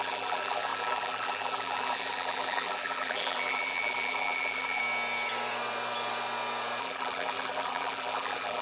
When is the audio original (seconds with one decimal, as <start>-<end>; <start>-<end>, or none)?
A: 4.8-6.8